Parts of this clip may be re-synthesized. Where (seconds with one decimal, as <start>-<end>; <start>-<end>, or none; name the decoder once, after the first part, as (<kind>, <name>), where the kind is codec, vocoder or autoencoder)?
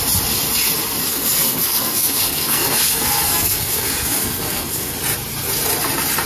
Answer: 1.1-4.9 (codec, SNAC)